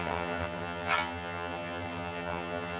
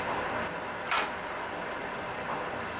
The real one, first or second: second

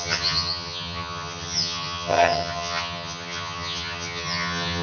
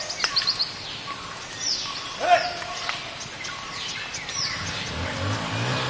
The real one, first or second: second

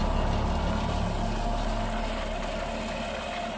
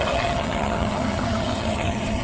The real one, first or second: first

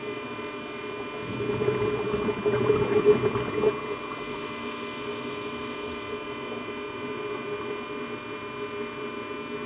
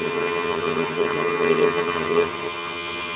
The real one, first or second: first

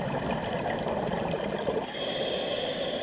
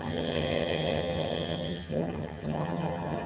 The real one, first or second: first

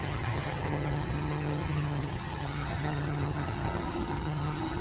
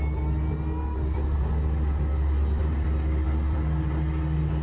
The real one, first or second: second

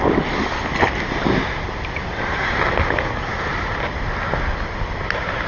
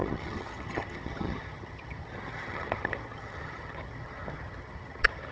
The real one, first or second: first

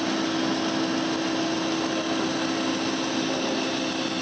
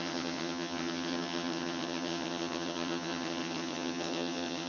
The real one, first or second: first